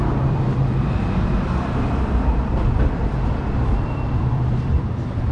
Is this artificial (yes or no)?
yes